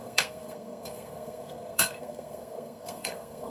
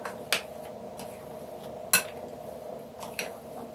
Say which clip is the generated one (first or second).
first